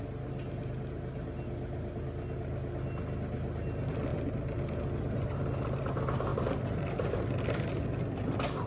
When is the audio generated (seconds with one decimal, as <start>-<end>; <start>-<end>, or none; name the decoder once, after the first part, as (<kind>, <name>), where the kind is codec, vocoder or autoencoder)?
none